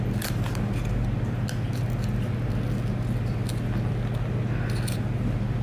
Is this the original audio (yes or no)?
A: yes